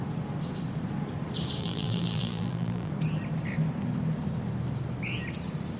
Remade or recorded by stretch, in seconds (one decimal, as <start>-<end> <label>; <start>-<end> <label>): 0.0-1.6 recorded; 1.6-2.9 remade; 2.9-5.8 recorded